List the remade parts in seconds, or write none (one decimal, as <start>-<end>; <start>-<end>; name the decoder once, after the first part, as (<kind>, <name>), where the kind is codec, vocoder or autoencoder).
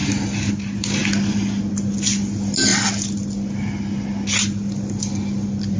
none